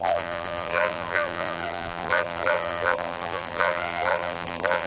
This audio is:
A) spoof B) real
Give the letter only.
A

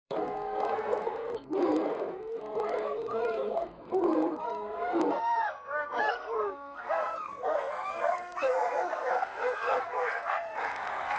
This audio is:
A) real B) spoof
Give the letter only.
B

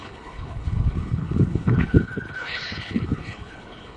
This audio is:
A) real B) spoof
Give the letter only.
B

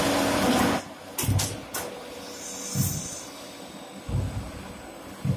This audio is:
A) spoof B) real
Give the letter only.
B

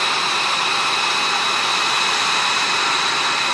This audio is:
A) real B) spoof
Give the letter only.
A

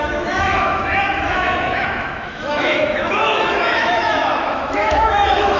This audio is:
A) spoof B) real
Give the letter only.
A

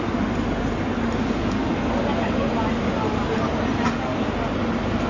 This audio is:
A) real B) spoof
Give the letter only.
A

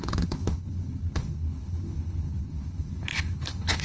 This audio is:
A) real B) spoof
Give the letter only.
B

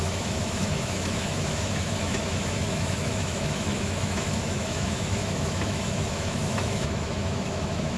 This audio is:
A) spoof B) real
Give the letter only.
A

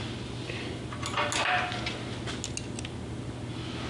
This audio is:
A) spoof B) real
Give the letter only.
B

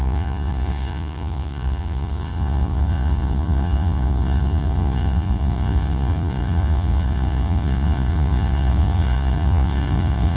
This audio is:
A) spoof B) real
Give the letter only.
A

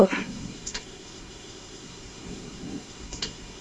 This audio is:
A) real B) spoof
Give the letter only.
B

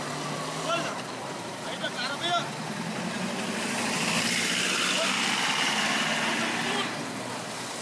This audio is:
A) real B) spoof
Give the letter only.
A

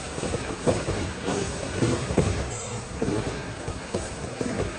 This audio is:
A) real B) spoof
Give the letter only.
B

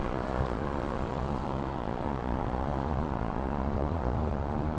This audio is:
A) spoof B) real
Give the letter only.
A